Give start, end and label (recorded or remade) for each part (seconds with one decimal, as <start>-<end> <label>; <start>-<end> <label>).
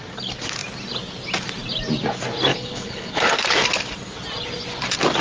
0.0-2.5 recorded; 2.5-3.3 remade; 3.3-5.2 recorded